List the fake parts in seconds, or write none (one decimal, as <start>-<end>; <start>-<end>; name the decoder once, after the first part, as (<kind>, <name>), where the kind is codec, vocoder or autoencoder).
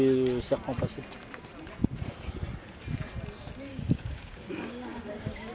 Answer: 3.7-5.5 (codec, DAC)